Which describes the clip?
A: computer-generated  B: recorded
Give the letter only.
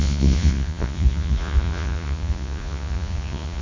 A